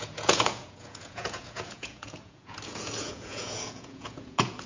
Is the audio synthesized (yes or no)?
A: yes